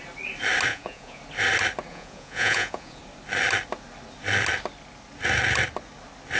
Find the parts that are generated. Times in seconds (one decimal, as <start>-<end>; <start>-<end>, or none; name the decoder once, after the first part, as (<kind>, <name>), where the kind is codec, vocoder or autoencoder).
0.7-1.2 (vocoder, Vocos); 1.9-3.0